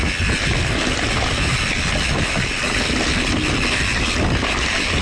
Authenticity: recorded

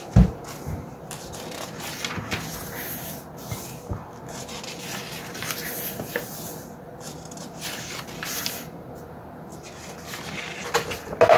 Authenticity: recorded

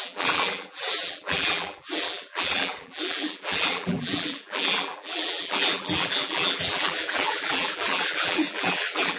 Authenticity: remade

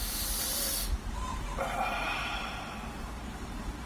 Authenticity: recorded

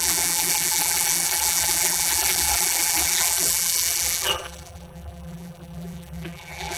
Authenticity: remade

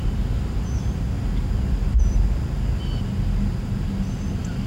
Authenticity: recorded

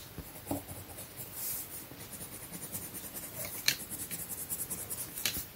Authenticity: recorded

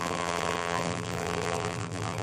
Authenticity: remade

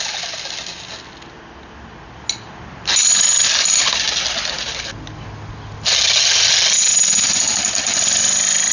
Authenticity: recorded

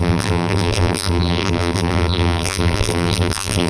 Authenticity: remade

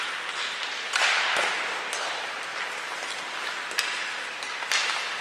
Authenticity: recorded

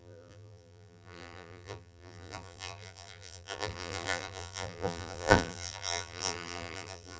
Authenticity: remade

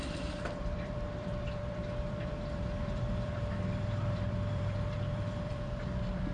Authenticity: remade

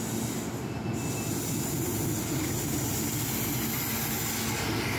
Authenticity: recorded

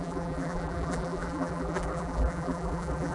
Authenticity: remade